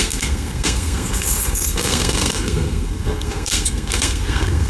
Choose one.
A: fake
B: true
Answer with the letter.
A